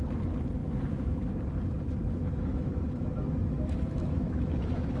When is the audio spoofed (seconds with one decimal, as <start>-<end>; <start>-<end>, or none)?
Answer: 0.6-1.3; 2.0-5.0